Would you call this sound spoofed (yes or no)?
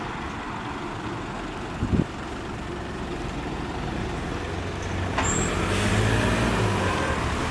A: no